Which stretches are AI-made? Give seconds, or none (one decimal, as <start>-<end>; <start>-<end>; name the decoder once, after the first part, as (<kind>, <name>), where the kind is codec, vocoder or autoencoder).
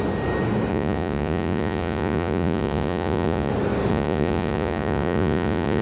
0.7-3.5 (vocoder, Vocos); 3.9-5.8